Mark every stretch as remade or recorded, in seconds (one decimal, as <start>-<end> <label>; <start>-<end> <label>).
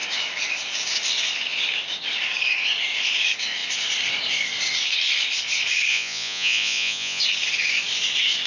0.0-5.9 recorded; 5.9-7.2 remade; 7.2-8.5 recorded